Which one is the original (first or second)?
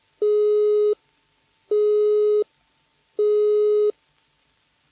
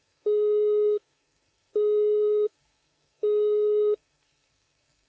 first